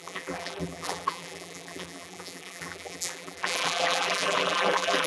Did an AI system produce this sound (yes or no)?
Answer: yes